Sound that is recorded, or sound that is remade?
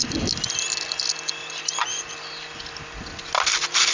recorded